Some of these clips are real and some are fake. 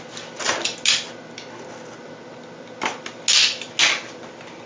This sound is real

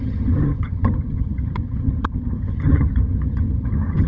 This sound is fake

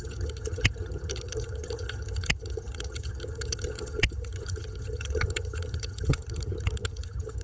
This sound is fake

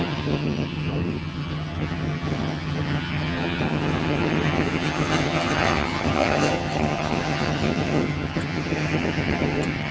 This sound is fake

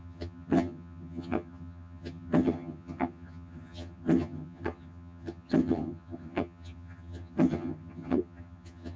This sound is fake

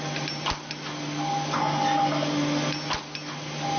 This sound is real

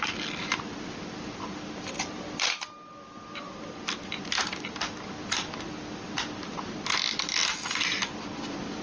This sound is real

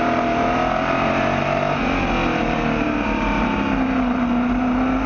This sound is real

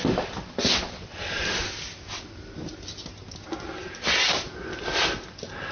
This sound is real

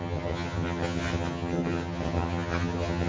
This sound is fake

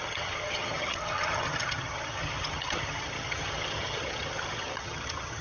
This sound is fake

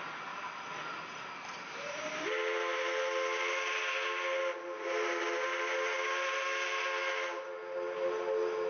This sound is real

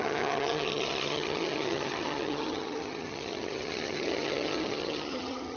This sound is fake